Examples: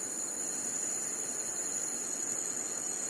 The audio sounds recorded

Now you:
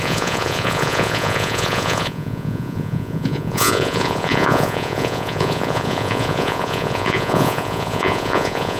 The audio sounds remade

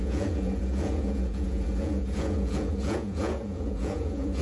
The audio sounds remade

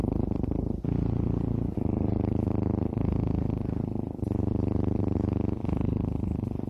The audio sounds recorded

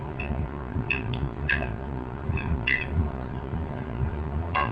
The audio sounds remade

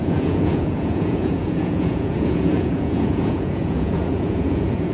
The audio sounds remade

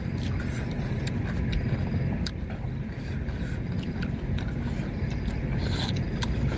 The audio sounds recorded